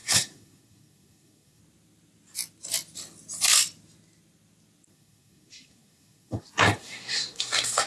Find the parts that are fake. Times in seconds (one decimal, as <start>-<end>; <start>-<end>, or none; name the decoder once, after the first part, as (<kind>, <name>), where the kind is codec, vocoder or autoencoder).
0.0-1.6 (codec, SNAC); 4.9-7.9